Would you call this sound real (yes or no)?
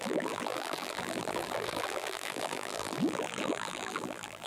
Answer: no